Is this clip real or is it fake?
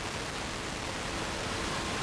real